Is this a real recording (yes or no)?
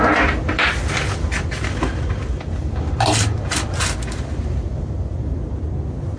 yes